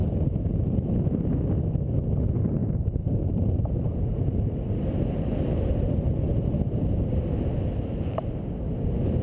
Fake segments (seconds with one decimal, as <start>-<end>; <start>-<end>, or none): 2.6-6.0